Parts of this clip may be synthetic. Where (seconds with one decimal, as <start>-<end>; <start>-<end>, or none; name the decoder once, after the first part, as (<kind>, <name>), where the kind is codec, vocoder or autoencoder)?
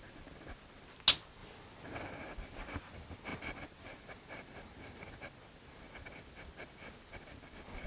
none